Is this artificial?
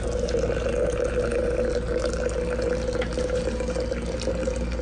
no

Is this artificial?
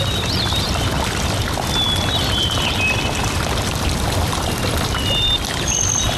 yes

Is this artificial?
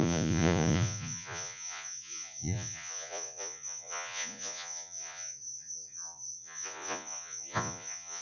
yes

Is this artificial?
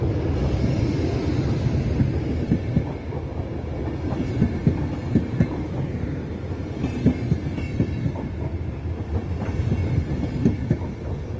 no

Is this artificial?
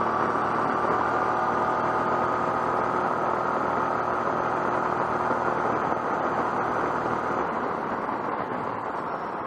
no